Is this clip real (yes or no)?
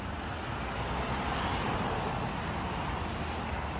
yes